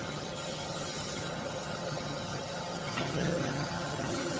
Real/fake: fake